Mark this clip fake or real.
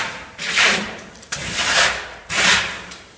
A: fake